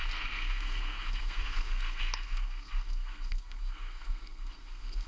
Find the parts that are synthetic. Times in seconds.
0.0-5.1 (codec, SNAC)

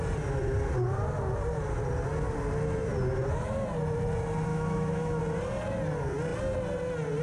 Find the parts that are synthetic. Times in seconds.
4.5-5.2 (autoencoder, DAC-VAE)

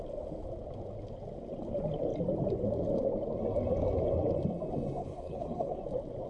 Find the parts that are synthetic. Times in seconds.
5.0-5.8 (codec, HILCodec)

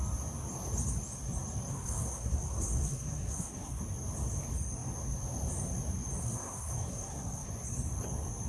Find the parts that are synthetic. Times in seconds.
1.7-3.8 (codec, SNAC); 6.2-7.5

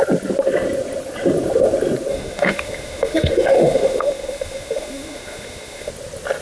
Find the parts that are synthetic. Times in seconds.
2.1-5.9 (autoencoder, DAC-VAE)

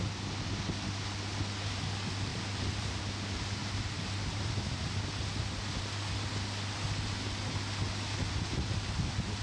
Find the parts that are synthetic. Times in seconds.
2.3-3.0 (vocoder, BigVGAN v2); 3.6-4.7

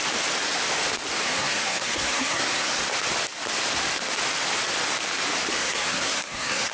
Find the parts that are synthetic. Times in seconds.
1.3-2.8 (codec, SNAC); 5.5-6.7

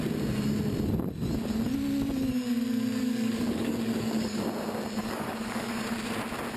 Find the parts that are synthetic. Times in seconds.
3.0-4.4 (codec, DAC); 5.0-5.7